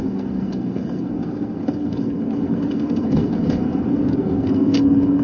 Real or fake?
fake